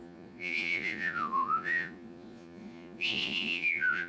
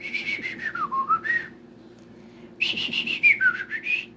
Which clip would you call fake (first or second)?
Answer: first